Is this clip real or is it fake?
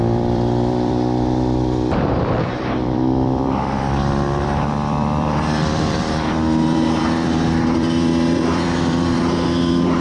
fake